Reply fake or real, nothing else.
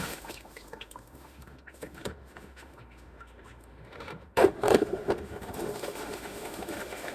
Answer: fake